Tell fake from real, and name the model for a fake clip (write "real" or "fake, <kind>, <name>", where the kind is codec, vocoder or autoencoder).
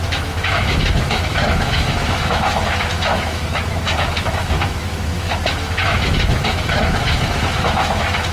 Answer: fake, autoencoder, DAC-VAE